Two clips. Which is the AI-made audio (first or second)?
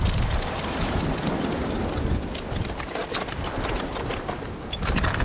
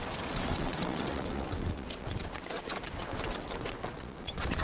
second